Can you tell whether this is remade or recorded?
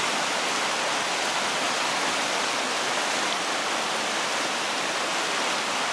recorded